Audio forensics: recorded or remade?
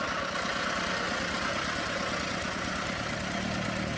recorded